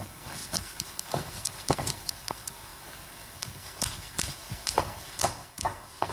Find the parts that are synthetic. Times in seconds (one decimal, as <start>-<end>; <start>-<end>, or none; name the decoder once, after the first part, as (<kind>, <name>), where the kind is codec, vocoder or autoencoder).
0.0-6.1 (codec, SNAC)